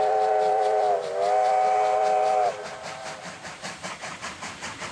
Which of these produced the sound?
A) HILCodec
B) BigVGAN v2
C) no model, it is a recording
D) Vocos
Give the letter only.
B